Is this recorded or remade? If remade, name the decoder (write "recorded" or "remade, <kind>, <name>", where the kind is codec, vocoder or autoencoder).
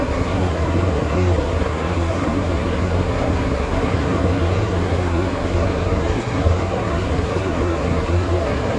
remade, codec, SNAC